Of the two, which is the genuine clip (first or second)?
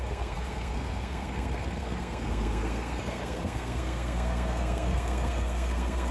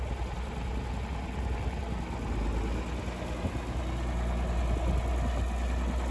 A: second